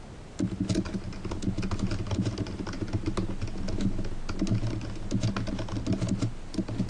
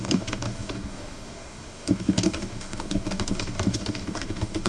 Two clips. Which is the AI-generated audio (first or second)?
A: second